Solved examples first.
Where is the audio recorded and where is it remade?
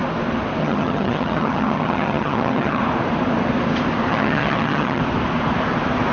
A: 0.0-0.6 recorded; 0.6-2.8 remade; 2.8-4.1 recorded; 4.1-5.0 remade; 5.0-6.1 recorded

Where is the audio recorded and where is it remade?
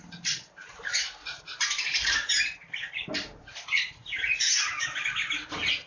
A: 0.0-5.9 remade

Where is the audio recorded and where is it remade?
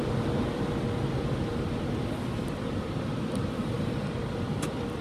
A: 0.0-0.8 remade; 0.8-2.7 recorded; 2.7-5.0 remade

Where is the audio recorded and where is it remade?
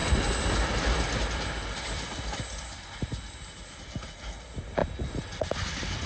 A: 0.0-6.1 recorded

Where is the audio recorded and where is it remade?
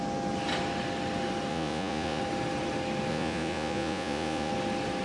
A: 0.0-1.5 recorded; 1.5-2.2 remade; 2.2-3.1 recorded; 3.1-4.5 remade; 4.5-5.0 recorded